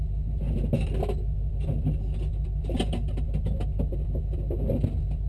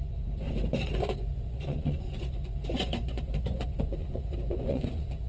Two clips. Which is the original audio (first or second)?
first